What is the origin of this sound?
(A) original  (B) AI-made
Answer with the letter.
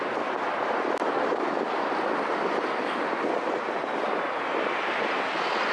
A